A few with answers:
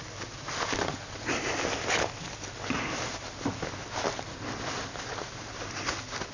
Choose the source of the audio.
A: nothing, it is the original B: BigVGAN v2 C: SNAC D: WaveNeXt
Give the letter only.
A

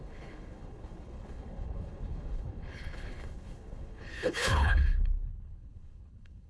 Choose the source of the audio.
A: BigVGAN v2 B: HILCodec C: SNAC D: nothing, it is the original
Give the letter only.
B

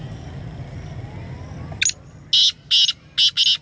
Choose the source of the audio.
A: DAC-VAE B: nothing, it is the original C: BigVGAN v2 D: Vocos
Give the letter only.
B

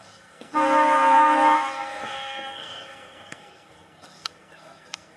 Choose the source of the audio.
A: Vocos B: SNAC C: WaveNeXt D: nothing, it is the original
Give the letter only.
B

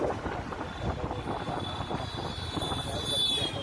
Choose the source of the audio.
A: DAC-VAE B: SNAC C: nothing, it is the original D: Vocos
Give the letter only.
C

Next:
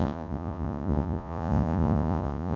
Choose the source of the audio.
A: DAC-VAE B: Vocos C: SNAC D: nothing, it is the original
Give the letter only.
B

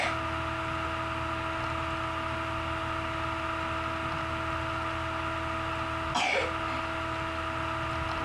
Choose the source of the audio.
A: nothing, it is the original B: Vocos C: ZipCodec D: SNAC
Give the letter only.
A